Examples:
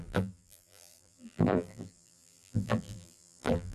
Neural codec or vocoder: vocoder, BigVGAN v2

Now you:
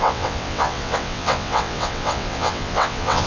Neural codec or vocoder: vocoder, WaveNeXt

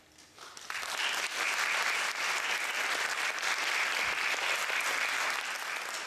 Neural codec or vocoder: none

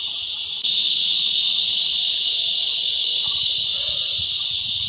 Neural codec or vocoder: vocoder, BigVGAN v2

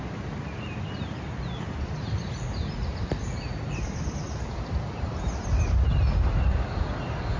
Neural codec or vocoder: none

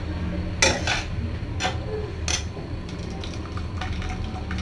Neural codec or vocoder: none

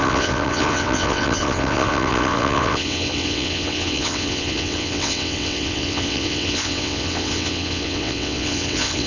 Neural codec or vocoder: vocoder, WaveNeXt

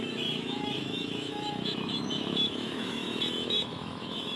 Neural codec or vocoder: autoencoder, DAC-VAE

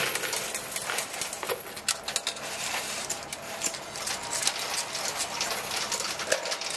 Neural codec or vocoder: none